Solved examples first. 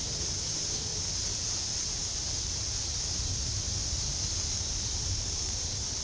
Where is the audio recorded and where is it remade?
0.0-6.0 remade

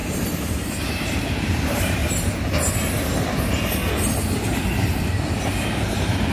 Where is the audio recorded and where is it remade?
0.0-2.0 remade; 2.0-4.2 recorded; 4.2-6.3 remade

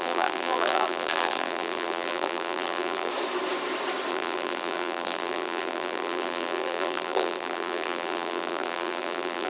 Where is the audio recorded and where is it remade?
0.0-3.1 remade; 3.1-4.1 recorded; 4.1-9.5 remade

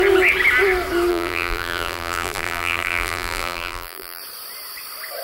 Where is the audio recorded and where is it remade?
0.0-1.1 recorded; 1.1-4.2 remade; 4.2-5.2 recorded